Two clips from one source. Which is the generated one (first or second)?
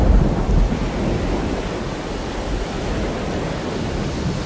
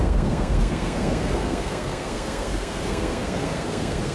second